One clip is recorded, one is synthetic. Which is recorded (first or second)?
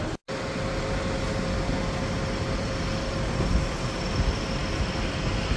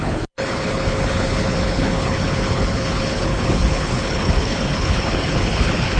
first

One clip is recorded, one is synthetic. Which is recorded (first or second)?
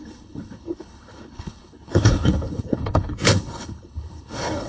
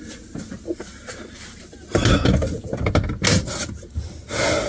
second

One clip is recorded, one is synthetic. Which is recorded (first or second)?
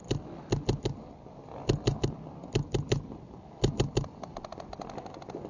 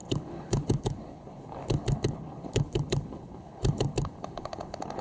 first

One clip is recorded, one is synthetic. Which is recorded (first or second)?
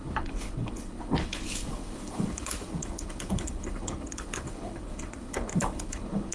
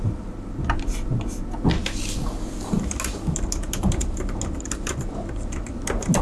second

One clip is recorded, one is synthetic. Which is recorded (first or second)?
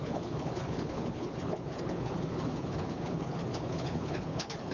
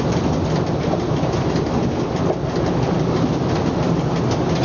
second